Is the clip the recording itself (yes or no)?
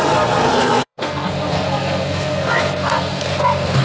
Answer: no